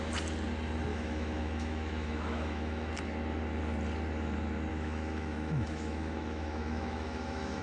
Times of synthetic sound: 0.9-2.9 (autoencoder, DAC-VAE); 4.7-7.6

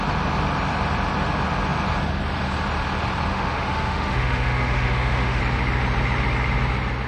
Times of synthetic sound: 3.3-5.4 (autoencoder, DAC-VAE)

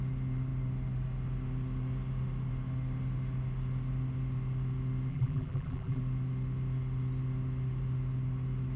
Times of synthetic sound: 5.1-6.0 (vocoder, BigVGAN v2)

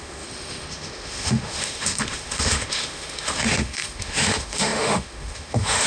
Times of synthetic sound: 0.0-5.9 (autoencoder, DAC-VAE)